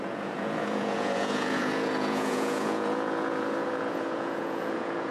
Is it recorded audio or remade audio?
remade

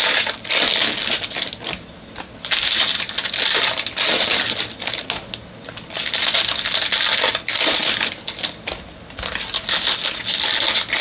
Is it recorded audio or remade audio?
recorded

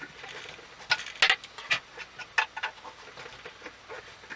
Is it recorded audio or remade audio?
recorded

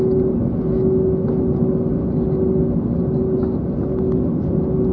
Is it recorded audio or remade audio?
recorded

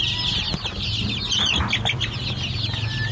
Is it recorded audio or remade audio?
recorded